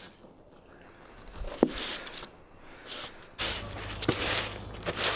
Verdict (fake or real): real